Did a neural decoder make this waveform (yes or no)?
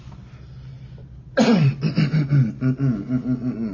no